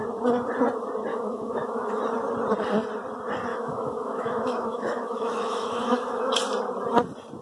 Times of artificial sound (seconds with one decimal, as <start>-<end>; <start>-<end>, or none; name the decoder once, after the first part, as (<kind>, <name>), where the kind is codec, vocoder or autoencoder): 1.1-2.0 (autoencoder, DAC-VAE); 3.5-6.3